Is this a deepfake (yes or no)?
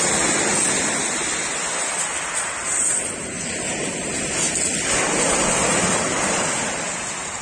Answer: no